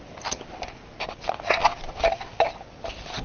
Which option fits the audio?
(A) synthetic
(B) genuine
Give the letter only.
B